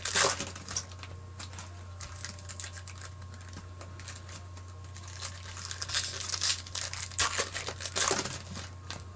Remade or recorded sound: recorded